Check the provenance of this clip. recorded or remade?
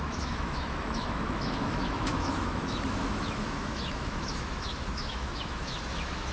remade